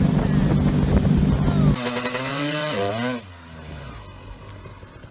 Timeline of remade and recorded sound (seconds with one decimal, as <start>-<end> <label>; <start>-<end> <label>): 0.0-2.3 recorded; 2.3-2.9 remade; 2.9-5.1 recorded